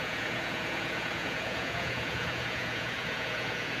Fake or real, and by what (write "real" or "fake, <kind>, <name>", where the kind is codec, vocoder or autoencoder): fake, vocoder, Vocos